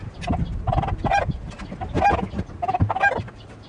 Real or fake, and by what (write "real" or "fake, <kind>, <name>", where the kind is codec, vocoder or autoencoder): real